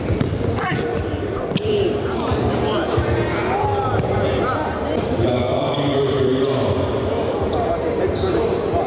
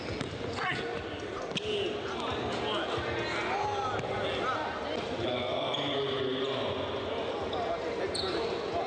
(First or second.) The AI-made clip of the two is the first